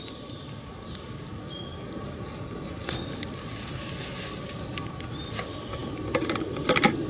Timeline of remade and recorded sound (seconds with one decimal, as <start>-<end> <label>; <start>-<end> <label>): 0.0-7.1 recorded